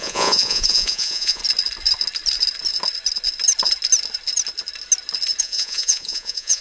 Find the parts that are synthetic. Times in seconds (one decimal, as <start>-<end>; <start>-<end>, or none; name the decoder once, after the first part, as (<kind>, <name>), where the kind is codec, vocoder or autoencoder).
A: 0.0-1.4 (vocoder, Vocos); 5.4-6.6